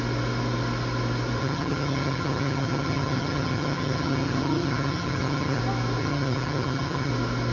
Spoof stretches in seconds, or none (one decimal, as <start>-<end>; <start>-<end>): 1.4-5.6; 6.0-7.1